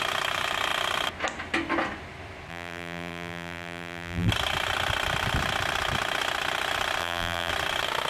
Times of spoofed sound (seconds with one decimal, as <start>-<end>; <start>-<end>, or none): 2.5-4.3; 7.0-7.5